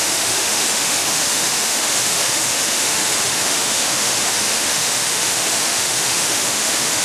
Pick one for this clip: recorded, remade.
remade